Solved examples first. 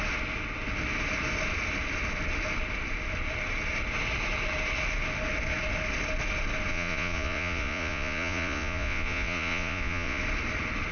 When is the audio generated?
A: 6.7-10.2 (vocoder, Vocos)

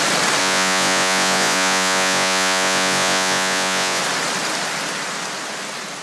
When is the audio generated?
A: 0.4-4.0 (vocoder, Vocos)

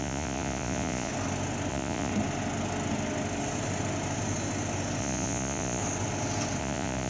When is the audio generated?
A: 0.0-1.1 (vocoder, Vocos); 1.7-2.1; 5.0-5.8; 6.6-7.1

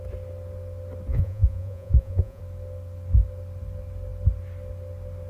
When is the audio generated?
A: 1.1-2.4 (vocoder, Vocos)